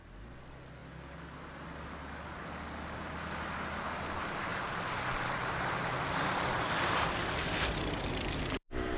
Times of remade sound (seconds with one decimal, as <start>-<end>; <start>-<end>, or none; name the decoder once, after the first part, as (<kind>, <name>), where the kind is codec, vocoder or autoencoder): 4.5-8.4 (vocoder, BigVGAN v2)

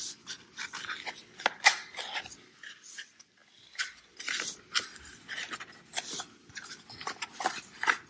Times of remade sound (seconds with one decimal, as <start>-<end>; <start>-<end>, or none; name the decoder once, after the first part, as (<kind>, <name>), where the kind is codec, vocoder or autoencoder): 3.4-6.2 (vocoder, BigVGAN v2)